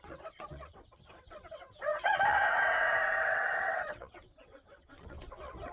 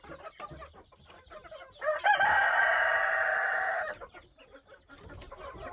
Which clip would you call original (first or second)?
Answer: second